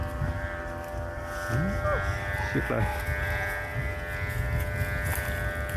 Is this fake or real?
real